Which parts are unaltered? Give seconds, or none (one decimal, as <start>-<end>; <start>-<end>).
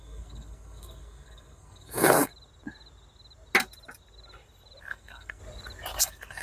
2.3-4.8; 5.4-6.0